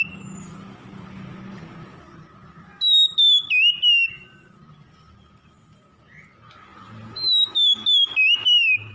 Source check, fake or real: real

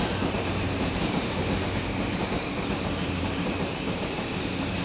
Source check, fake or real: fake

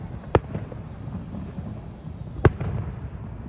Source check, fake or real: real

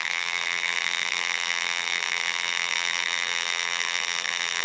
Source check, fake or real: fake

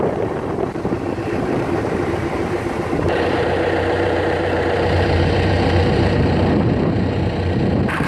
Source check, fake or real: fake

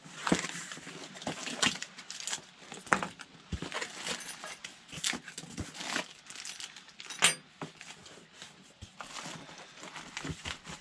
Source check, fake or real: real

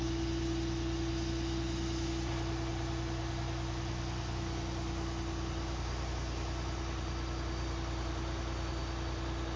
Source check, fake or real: real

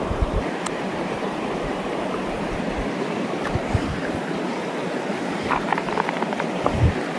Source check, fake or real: fake